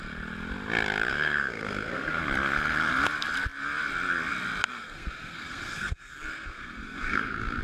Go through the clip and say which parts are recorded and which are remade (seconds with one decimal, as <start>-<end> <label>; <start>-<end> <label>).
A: 0.0-1.1 recorded; 1.1-2.2 remade; 2.2-4.7 recorded; 4.7-7.6 remade